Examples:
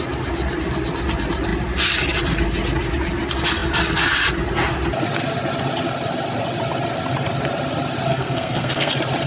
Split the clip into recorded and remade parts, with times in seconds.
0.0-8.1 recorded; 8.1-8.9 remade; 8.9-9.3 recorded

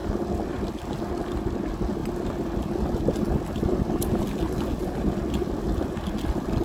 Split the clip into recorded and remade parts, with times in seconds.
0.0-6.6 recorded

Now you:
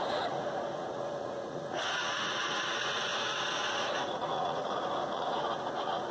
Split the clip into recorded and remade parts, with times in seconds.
0.0-6.1 remade

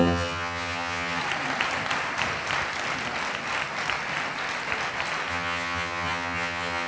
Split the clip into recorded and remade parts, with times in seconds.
0.0-1.2 remade; 1.2-5.3 recorded; 5.3-6.9 remade

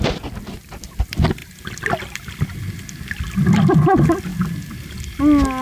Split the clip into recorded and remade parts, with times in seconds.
0.0-5.6 recorded

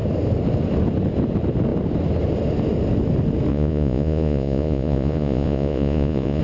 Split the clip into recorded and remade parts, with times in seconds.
0.0-3.5 recorded; 3.5-6.4 remade

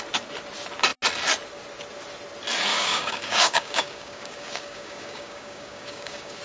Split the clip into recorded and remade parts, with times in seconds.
0.0-2.7 recorded; 2.7-6.4 remade